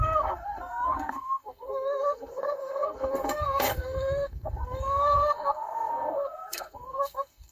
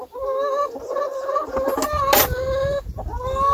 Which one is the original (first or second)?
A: second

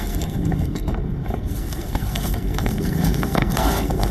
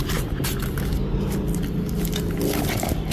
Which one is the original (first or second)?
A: second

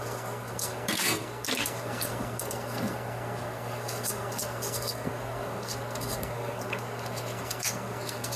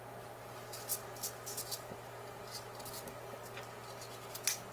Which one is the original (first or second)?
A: second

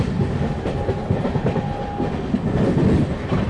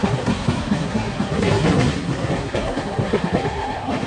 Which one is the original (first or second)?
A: first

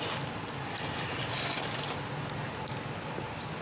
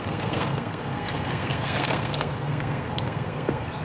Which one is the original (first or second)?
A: first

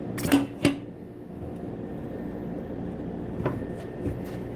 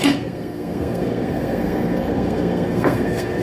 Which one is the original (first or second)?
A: first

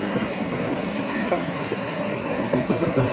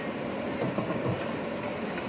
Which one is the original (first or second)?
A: second